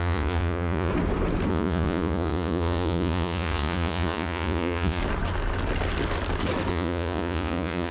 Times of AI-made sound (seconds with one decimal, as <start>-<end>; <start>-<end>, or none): 0.0-0.9; 1.5-5.0; 6.7-7.9